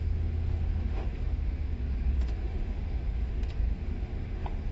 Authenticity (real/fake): fake